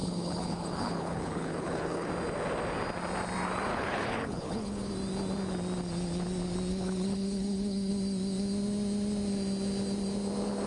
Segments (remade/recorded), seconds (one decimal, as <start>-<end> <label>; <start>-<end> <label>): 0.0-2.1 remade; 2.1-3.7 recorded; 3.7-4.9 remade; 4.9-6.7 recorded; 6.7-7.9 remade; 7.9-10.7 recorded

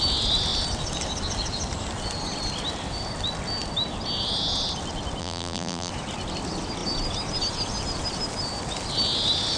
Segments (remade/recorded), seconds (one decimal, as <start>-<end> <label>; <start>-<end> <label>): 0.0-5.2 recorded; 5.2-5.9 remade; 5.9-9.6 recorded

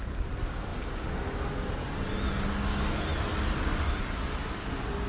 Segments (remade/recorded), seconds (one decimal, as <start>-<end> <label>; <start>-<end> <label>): 0.0-5.1 recorded